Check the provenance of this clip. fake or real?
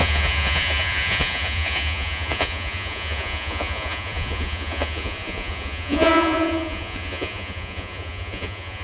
fake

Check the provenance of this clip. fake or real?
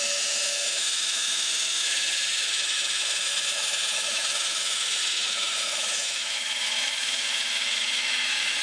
fake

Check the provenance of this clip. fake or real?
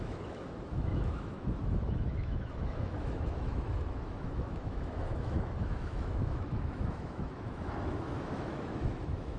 fake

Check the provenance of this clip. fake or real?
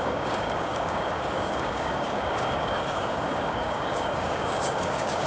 fake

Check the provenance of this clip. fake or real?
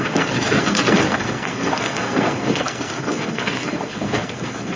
fake